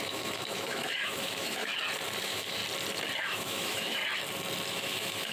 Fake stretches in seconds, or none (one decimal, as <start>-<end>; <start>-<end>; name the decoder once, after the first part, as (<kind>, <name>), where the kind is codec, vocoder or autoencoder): 0.0-1.7 (autoencoder, DAC-VAE); 2.2-2.6; 3.2-4.0; 4.7-5.3